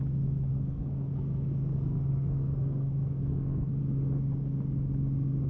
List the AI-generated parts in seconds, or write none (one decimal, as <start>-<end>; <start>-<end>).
0.5-3.8